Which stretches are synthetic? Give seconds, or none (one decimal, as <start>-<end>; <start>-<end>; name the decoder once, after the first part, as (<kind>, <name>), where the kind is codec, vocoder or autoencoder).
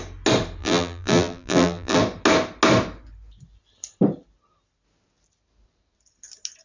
0.6-2.0 (vocoder, BigVGAN v2)